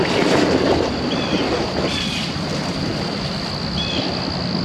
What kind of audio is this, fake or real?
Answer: real